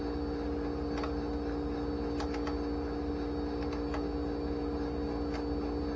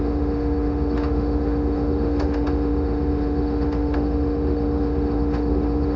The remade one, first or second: second